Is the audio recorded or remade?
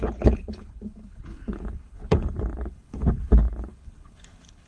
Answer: remade